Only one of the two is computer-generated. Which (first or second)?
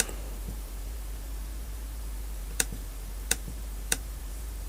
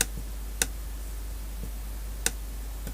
first